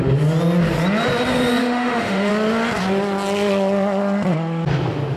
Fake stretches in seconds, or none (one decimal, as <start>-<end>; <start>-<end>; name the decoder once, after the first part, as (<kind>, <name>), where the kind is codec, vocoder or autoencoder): 1.6-2.3 (autoencoder, DAC-VAE)